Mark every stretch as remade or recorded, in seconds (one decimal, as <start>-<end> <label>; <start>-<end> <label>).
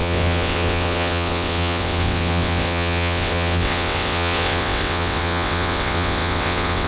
0.0-6.9 remade